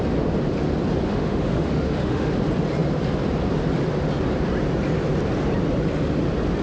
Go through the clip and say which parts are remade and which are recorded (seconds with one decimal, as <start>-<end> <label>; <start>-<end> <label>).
0.0-1.1 recorded; 1.1-2.3 remade; 2.3-6.6 recorded